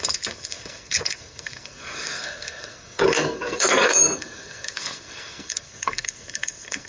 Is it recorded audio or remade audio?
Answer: remade